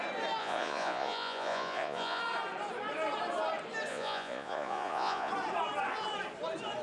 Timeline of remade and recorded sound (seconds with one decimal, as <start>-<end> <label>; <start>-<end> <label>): 0.0-0.4 recorded; 0.4-2.2 remade; 2.2-3.9 recorded; 3.9-5.3 remade; 5.3-6.8 recorded